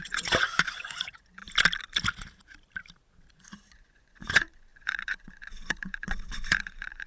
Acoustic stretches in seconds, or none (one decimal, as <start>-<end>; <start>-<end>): 1.4-3.3